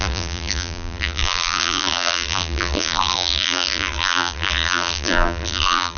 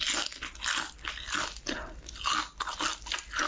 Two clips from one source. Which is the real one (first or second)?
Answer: second